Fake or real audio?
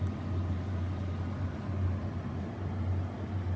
real